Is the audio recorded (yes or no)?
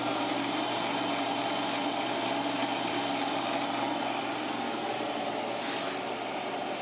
yes